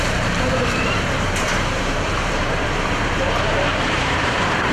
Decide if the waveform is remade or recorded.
remade